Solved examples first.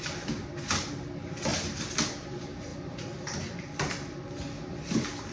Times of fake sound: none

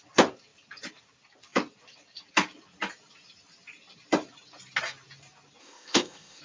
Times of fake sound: 5.6-6.4 (codec, ZipCodec)

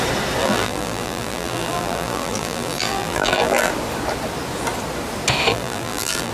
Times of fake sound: 0.4-3.7 (vocoder, BigVGAN v2); 5.5-6.3

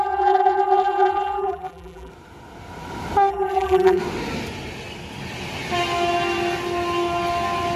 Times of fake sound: 0.0-2.1 (vocoder, BigVGAN v2); 3.3-4.0

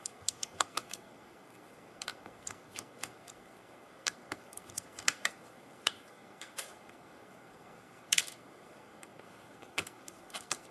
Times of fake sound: 0.0-10.7 (codec, SNAC)